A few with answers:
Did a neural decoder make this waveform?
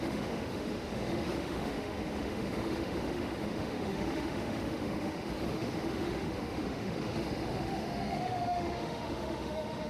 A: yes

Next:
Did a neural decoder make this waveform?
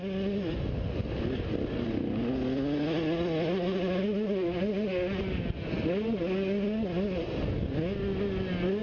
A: no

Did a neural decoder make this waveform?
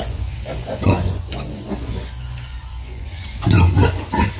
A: yes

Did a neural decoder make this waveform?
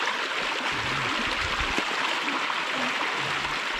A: no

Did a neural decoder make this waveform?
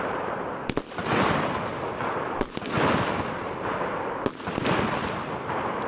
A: no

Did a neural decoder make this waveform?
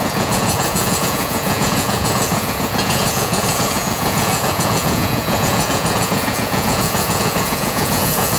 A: yes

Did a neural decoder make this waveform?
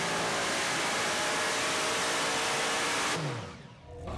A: no